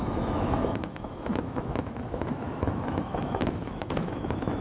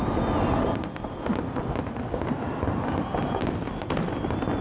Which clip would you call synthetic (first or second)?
first